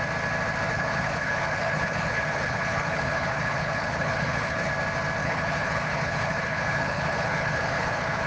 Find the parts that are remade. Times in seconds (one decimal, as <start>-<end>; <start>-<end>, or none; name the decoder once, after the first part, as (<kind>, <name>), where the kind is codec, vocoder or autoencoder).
0.7-4.7 (codec, HILCodec); 5.2-8.3